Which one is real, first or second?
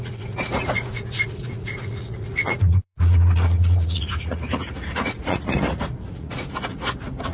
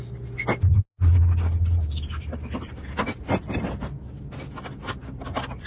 second